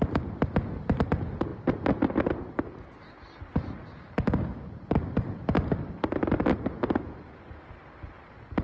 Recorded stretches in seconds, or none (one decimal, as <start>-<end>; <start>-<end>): 0.0-8.6